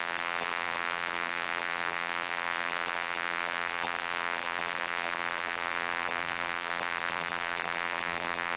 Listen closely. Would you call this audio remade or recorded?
remade